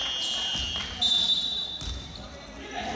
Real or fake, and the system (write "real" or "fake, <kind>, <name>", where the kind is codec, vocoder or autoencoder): real